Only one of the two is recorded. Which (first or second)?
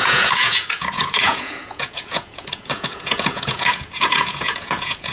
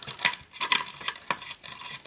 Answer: second